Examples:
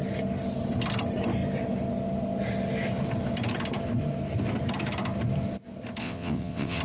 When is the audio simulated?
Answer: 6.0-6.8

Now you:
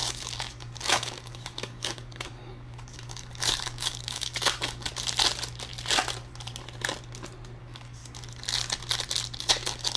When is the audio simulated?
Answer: 0.0-4.9; 7.6-8.0; 9.4-10.0

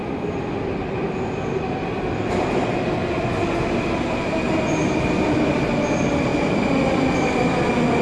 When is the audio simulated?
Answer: none

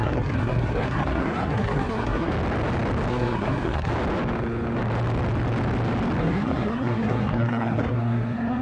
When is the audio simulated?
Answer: 0.0-2.3; 3.1-3.9; 6.2-8.6

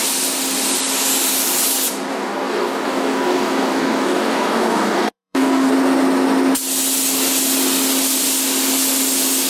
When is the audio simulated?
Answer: 2.1-5.7

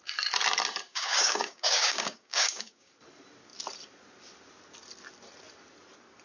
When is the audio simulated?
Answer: 0.9-2.9

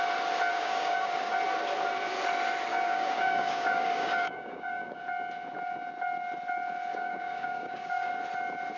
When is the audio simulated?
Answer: 0.5-1.3; 2.7-5.0; 6.9-8.1